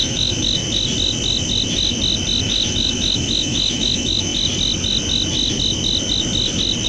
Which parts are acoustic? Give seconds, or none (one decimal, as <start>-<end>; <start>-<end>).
0.6-2.4; 4.3-6.9